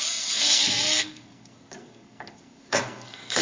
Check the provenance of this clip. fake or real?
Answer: fake